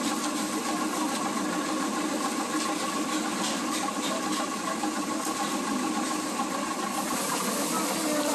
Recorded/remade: recorded